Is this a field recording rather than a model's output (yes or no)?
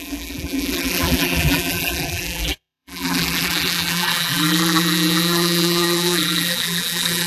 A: no